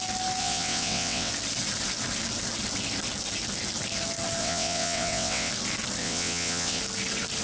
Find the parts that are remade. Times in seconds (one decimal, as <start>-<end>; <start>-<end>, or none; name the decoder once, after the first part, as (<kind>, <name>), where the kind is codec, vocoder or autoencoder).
0.4-1.3 (vocoder, WaveNeXt); 4.4-5.5; 6.0-6.8